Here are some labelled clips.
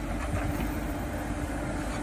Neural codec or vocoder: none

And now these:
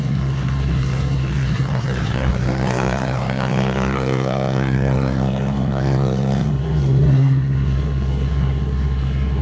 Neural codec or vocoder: codec, SNAC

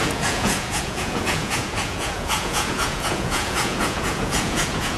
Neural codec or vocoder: vocoder, Vocos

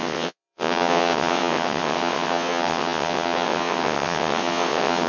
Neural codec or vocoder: vocoder, WaveNeXt